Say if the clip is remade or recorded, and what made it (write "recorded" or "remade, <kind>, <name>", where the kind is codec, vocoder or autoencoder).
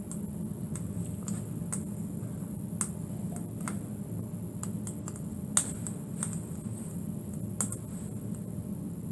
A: recorded